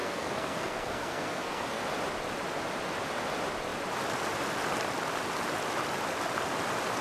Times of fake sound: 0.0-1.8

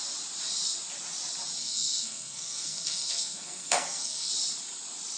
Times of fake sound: 1.6-4.3

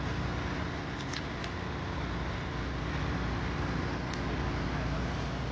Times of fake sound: none